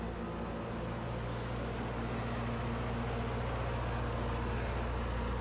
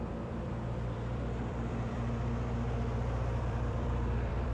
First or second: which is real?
first